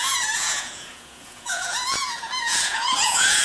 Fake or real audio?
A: fake